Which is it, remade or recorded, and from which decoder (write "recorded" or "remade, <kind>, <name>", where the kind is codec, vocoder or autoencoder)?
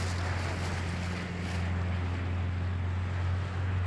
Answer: recorded